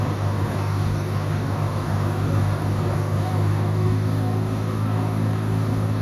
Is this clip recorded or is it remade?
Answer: remade